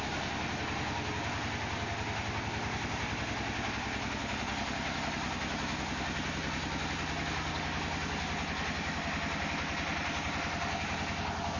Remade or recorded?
recorded